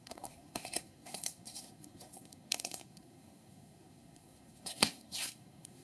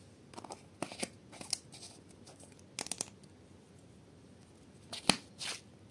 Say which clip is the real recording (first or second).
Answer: second